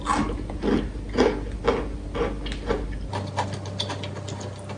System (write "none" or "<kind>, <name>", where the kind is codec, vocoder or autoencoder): none